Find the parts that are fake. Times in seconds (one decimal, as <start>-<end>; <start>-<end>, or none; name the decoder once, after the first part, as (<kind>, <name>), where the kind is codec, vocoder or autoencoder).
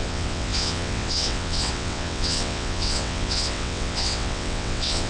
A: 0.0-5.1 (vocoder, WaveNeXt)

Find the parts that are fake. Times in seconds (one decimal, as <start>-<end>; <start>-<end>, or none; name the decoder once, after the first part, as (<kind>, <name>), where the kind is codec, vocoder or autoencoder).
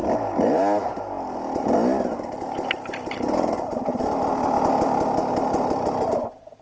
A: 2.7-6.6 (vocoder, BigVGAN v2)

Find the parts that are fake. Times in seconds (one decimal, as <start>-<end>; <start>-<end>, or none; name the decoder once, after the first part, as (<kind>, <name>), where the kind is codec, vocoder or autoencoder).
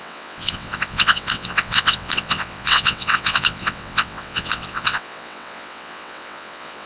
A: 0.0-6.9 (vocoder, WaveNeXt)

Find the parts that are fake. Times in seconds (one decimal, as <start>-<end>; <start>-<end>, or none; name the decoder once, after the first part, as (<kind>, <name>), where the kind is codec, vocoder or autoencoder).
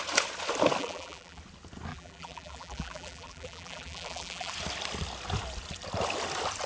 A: 0.8-1.4 (vocoder, BigVGAN v2); 1.9-4.5